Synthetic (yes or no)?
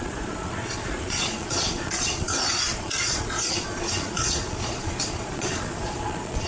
yes